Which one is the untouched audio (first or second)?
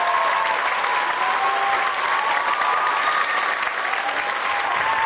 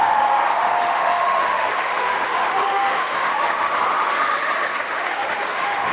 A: first